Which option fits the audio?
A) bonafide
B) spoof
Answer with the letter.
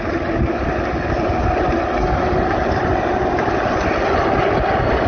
A